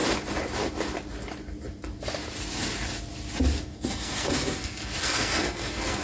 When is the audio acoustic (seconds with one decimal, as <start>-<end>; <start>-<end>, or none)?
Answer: 0.0-3.6